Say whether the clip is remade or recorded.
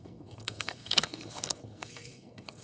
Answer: remade